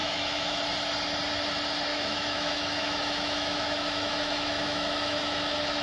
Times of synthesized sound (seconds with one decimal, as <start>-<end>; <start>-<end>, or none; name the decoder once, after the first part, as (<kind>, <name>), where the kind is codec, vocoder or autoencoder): 0.0-0.6 (autoencoder, DAC-VAE); 1.9-5.8